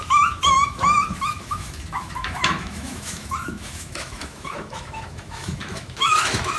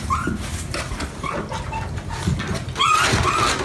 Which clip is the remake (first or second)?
first